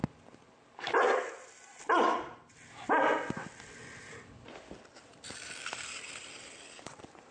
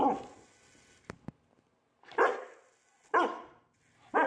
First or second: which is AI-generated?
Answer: first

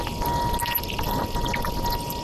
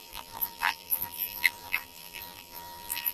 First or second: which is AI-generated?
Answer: second